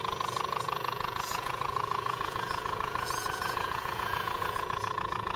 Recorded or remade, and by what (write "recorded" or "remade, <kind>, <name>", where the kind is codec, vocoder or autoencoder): remade, vocoder, Vocos